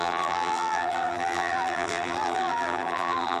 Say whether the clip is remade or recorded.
remade